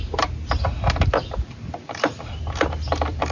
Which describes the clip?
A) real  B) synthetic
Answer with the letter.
B